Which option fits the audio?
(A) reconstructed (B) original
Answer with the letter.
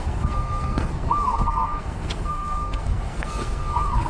A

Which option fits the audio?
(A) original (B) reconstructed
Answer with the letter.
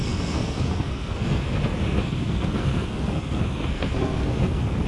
B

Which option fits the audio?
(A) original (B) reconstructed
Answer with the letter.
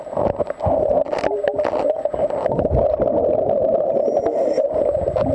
A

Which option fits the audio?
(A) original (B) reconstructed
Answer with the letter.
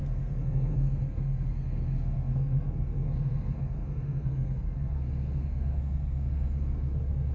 B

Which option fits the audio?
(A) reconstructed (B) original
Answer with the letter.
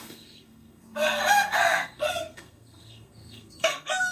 A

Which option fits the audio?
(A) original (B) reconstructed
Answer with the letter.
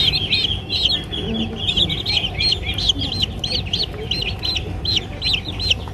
A